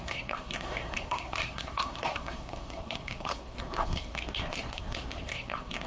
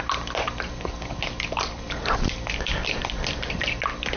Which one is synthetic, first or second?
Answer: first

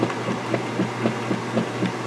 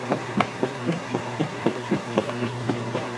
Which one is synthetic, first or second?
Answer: second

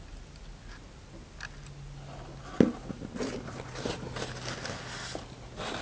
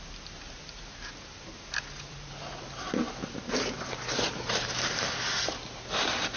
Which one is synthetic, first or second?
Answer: second